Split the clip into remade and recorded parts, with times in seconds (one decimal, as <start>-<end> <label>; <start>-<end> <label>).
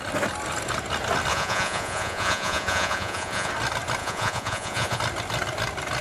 0.0-1.3 recorded; 1.3-3.5 remade; 3.5-4.0 recorded; 4.0-5.0 remade; 5.0-6.0 recorded